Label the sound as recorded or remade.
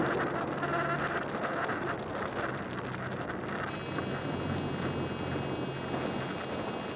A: recorded